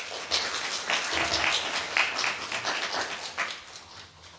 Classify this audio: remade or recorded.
recorded